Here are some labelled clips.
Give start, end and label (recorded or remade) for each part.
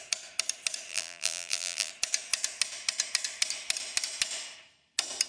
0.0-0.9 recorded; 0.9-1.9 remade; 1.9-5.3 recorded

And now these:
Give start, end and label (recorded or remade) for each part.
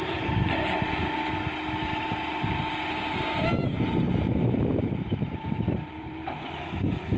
0.0-1.0 remade; 1.0-1.8 recorded; 1.8-7.2 remade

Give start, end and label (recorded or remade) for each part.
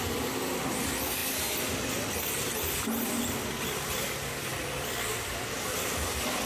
0.0-6.5 recorded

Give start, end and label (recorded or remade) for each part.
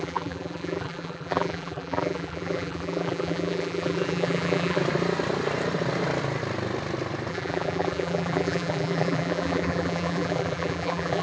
0.0-4.8 remade; 4.8-7.3 recorded; 7.3-11.2 remade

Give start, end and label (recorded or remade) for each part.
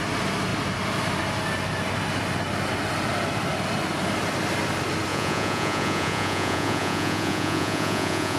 0.0-5.1 recorded; 5.1-8.4 remade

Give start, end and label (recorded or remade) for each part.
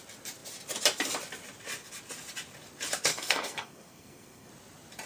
0.0-3.1 recorded; 3.1-4.5 remade; 4.5-5.1 recorded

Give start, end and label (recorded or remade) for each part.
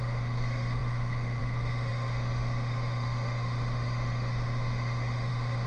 0.0-5.7 remade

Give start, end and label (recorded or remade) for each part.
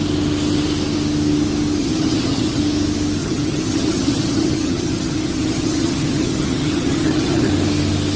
0.0-1.8 recorded; 1.8-2.6 remade; 2.6-3.2 recorded; 3.2-7.5 remade; 7.5-8.2 recorded